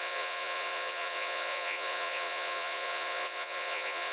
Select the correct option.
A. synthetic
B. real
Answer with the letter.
A